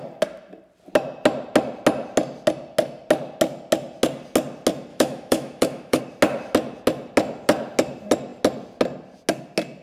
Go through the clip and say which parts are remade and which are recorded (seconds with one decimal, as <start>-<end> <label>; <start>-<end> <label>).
0.0-4.9 recorded; 4.9-6.0 remade; 6.0-9.8 recorded